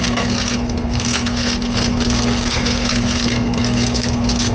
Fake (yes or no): yes